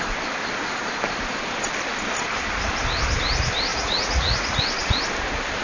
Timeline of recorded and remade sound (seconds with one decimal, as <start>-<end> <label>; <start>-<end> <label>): 0.0-3.7 recorded; 3.7-5.0 remade; 5.0-5.6 recorded